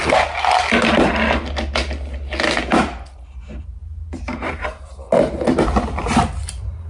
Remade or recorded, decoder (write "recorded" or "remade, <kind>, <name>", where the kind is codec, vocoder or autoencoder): recorded